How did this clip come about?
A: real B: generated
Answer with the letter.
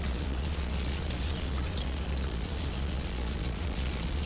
B